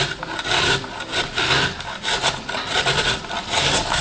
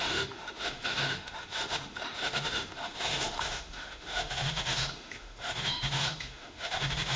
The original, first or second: first